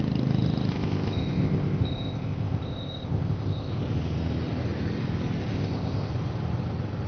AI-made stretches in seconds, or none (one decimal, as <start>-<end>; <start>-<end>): 0.7-3.7; 5.4-6.1